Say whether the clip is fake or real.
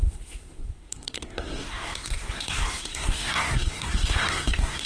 fake